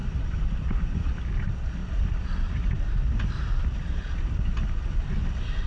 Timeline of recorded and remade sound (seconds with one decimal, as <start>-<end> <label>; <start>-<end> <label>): 0.0-0.5 remade; 0.5-1.8 recorded; 1.8-4.2 remade; 4.2-5.7 recorded